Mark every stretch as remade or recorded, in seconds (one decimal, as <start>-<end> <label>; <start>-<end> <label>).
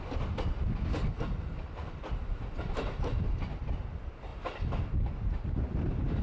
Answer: 0.0-1.8 remade; 1.8-3.2 recorded; 3.2-4.3 remade; 4.3-4.9 recorded; 4.9-6.2 remade